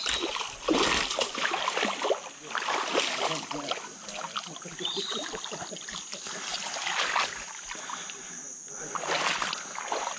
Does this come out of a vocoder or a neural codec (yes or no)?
no